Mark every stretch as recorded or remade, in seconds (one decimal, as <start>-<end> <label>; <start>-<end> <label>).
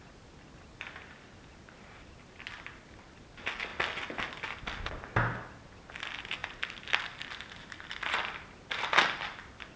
0.0-9.8 recorded